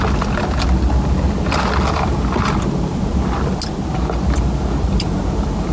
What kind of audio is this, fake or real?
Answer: real